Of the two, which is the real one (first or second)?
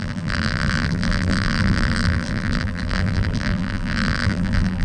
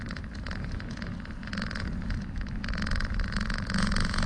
second